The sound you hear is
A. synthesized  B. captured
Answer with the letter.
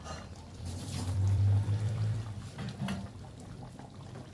A